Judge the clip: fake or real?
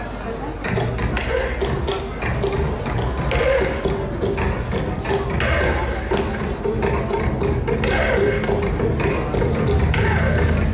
real